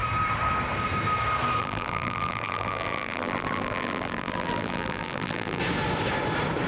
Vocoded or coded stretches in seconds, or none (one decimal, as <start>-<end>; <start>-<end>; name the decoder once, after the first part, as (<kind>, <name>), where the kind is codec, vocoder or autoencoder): 1.6-5.6 (vocoder, BigVGAN v2)